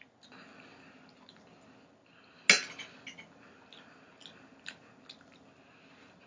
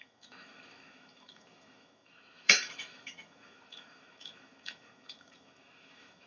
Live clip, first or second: first